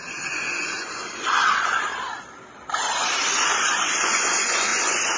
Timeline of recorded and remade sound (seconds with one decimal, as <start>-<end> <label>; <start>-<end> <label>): 0.0-1.9 remade; 1.9-3.6 recorded; 3.6-5.2 remade